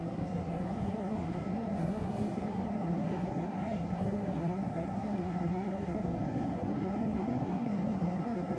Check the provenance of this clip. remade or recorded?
remade